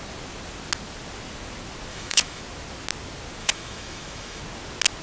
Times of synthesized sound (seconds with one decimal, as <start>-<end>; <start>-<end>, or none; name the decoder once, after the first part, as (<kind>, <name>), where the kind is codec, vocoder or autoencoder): 1.9-2.4 (autoencoder, DAC-VAE); 3.4-4.4